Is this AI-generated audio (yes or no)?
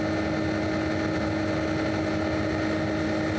no